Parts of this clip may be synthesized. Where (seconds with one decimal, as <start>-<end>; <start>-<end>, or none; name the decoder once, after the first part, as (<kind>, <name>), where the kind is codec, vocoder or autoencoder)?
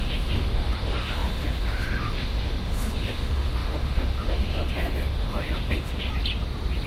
0.0-6.1 (autoencoder, DAC-VAE)